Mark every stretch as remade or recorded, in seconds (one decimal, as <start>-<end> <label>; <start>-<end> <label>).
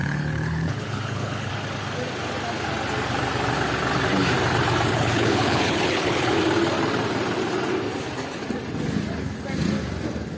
0.0-1.5 remade; 1.5-4.9 recorded; 4.9-6.4 remade; 6.4-10.4 recorded